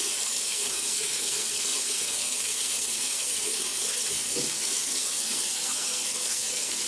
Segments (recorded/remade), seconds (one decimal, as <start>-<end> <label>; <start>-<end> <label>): 0.0-6.9 remade